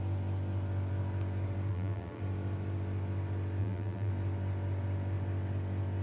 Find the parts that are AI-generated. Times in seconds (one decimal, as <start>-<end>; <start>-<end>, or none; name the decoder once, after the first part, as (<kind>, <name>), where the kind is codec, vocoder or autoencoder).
1.7-2.2 (vocoder, BigVGAN v2); 3.6-4.1